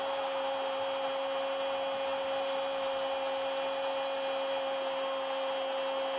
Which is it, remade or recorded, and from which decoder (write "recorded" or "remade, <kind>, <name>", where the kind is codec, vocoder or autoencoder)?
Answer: recorded